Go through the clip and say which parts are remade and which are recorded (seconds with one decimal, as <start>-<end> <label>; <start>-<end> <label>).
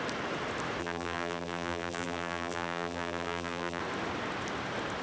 0.0-0.8 recorded; 0.8-3.8 remade; 3.8-5.0 recorded